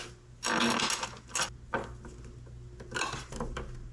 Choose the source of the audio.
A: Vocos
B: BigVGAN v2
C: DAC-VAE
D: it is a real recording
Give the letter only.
D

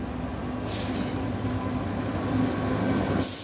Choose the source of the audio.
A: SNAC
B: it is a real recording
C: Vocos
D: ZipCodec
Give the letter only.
B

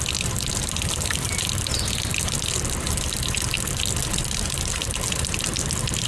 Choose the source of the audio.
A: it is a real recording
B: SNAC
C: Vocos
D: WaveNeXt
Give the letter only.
A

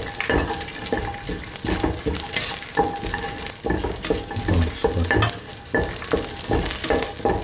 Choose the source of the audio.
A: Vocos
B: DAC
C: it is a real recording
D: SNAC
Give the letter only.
C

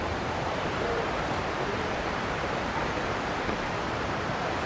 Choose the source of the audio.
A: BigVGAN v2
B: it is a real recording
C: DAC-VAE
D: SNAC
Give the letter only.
A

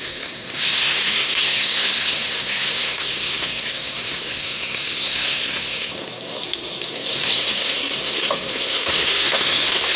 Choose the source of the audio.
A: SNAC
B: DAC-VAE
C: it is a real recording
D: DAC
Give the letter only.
A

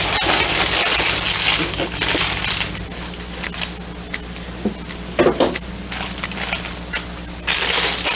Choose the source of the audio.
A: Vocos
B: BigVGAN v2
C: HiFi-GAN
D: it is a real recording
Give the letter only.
D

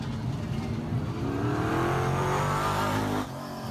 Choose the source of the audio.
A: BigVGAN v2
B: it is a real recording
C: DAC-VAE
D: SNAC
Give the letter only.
B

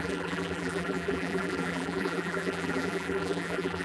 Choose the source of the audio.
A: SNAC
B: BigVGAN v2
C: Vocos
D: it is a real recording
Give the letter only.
B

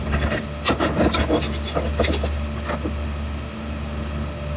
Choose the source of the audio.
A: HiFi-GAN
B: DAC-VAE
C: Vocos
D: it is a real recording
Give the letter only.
D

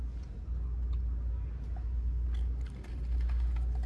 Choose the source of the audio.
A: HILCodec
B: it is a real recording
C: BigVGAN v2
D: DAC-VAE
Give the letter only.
B